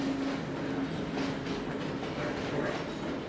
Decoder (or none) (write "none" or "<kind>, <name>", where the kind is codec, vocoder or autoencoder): none